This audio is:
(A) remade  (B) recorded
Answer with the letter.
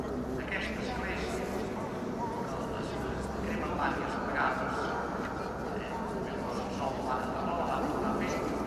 B